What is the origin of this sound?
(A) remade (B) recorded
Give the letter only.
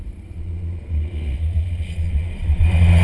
A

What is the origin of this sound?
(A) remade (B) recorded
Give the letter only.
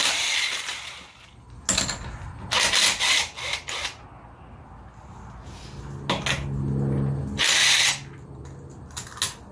B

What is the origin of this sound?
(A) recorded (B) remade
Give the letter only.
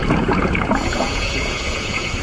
B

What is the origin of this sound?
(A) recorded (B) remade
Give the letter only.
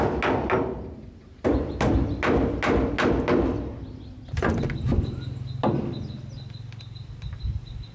A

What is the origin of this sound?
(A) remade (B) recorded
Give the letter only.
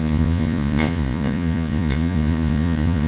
A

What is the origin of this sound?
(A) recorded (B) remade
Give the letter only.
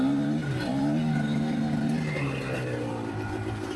A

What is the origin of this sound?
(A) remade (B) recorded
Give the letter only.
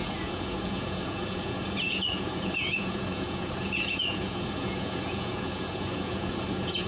A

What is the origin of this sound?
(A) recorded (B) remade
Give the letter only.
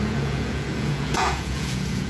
B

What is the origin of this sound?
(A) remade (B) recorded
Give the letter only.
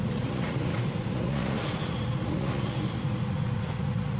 A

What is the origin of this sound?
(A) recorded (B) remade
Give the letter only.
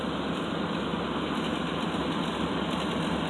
A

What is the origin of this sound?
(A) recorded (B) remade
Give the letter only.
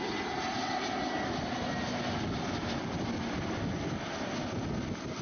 A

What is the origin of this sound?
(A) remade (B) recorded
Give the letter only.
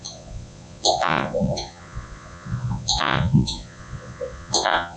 A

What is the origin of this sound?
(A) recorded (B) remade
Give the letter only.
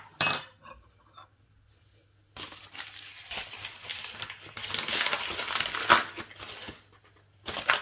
A